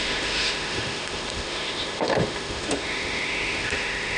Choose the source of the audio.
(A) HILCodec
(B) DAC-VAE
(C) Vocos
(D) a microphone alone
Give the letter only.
B